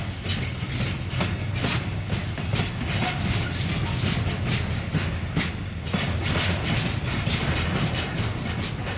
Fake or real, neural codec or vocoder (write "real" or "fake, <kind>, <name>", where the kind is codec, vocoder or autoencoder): real